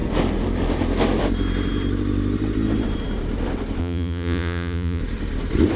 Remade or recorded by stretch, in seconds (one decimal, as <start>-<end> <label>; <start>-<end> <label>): 0.0-3.8 recorded; 3.8-5.0 remade; 5.0-5.8 recorded